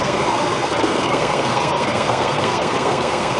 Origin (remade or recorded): remade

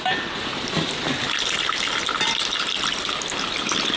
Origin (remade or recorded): recorded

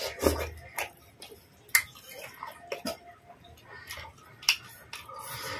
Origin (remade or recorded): recorded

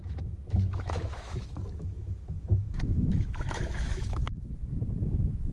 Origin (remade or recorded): remade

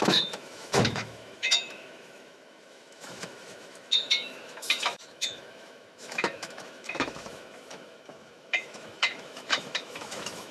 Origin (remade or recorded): remade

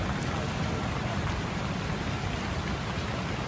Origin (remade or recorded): recorded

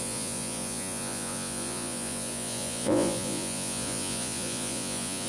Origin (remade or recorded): remade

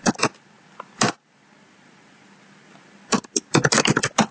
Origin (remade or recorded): recorded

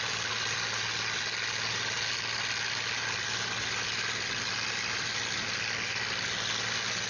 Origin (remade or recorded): recorded